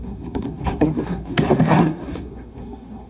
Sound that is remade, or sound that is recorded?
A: remade